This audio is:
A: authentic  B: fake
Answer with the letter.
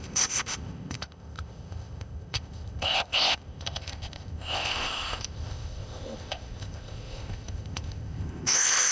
B